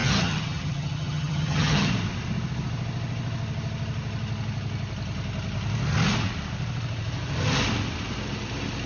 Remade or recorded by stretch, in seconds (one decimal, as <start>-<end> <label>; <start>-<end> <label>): 0.0-1.9 remade; 1.9-8.9 recorded